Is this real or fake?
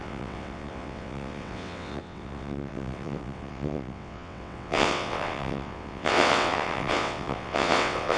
fake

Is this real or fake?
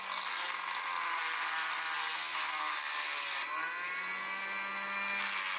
real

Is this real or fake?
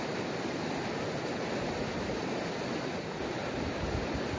real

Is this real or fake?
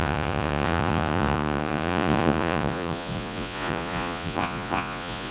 fake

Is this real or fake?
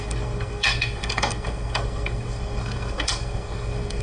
fake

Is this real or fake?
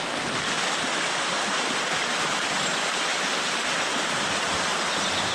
real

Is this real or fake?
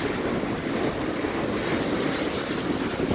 real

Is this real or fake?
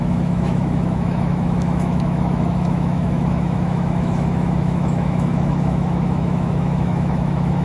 fake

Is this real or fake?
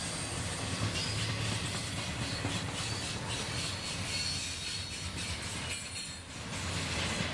real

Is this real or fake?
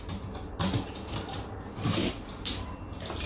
real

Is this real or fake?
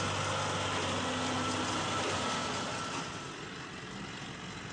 real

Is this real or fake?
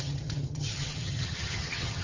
fake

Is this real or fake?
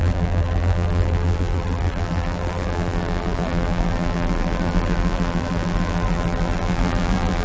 fake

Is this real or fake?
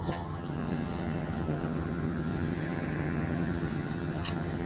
fake